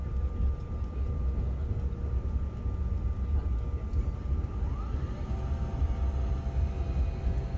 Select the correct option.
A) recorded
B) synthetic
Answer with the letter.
A